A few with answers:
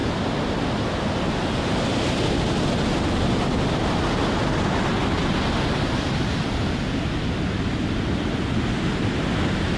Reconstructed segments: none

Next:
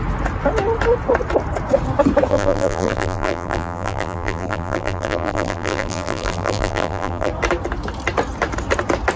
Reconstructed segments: 2.3-7.3 (vocoder, BigVGAN v2)

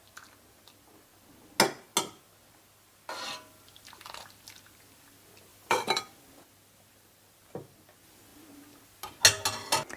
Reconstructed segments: 5.5-6.0 (vocoder, BigVGAN v2)

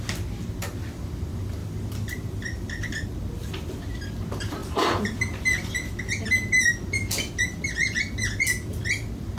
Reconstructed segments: 1.6-3.1 (vocoder, BigVGAN v2); 4.6-5.2

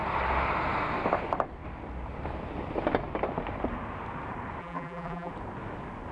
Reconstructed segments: 4.6-5.3 (vocoder, BigVGAN v2)